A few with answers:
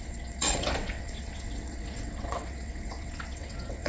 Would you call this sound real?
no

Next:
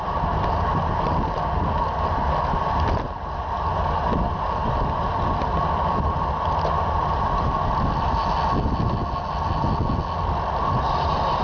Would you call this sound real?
yes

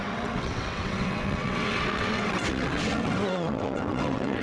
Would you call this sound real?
no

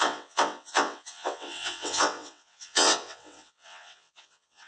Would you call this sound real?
no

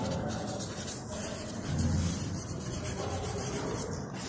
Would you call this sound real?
yes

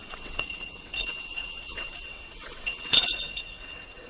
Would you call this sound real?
no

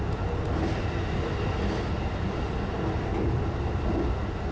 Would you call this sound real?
yes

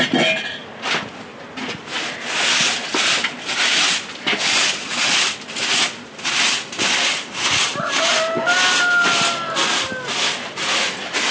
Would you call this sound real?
yes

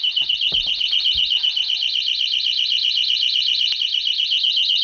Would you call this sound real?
yes